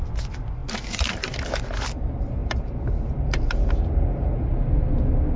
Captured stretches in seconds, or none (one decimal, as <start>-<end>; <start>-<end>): 0.0-5.4